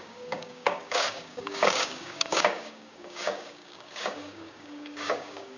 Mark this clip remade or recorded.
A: remade